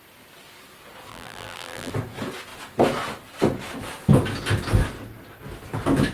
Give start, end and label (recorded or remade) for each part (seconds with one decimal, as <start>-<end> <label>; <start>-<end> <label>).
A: 0.0-1.1 recorded; 1.1-1.9 remade; 1.9-6.1 recorded